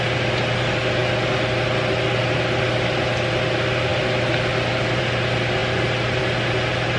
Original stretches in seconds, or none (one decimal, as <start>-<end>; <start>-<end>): 0.0-7.0